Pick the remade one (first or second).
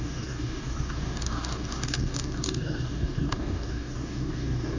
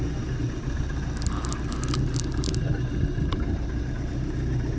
first